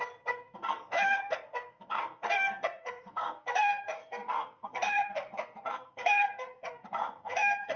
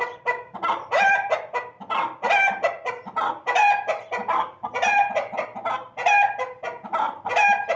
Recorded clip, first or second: second